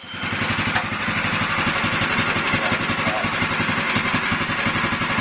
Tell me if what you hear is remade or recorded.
recorded